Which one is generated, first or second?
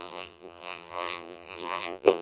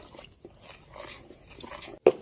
first